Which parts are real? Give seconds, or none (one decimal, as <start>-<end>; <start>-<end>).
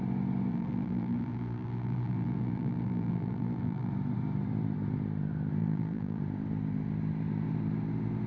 0.0-0.5; 3.9-5.6; 6.2-8.3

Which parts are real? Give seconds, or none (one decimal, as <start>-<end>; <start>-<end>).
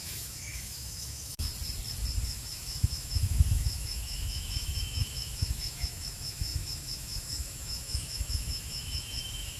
1.5-2.2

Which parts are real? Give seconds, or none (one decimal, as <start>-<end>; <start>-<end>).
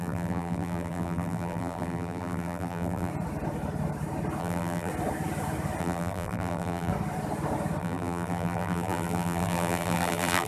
3.1-4.4; 4.9-5.8; 6.9-7.8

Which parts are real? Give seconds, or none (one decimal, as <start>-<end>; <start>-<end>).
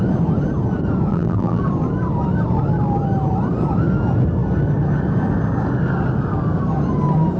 0.0-1.1; 1.6-7.4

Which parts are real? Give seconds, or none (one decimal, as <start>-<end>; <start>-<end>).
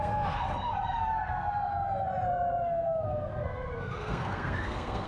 1.7-2.3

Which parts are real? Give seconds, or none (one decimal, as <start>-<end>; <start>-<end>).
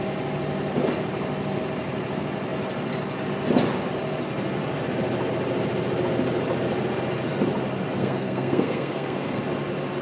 0.0-8.0; 9.4-10.0